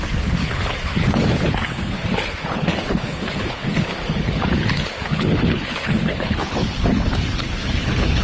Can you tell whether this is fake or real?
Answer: fake